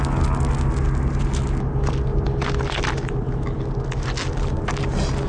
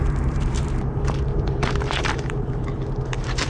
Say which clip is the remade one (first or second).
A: second